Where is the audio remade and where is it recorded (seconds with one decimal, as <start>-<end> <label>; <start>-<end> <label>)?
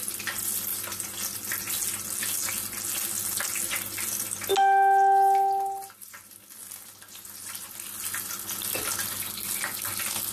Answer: 0.0-10.3 recorded